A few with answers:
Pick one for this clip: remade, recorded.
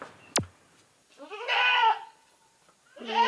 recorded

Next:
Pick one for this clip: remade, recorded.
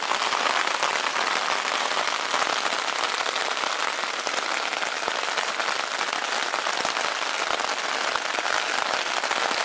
recorded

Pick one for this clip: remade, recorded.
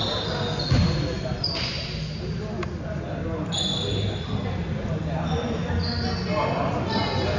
recorded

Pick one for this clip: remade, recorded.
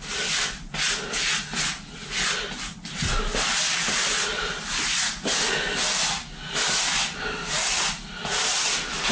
remade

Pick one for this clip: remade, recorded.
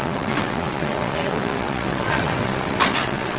remade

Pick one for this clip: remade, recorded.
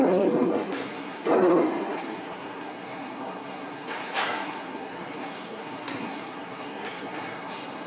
remade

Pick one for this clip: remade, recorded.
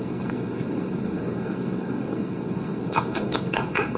remade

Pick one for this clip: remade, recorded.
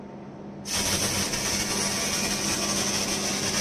recorded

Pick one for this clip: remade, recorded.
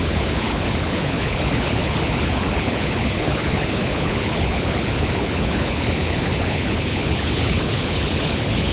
remade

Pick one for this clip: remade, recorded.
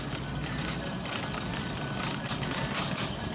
recorded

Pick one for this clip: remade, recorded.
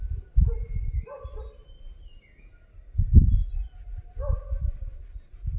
recorded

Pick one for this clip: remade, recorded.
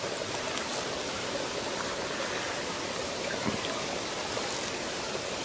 recorded